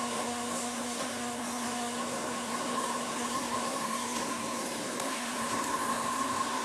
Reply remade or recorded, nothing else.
remade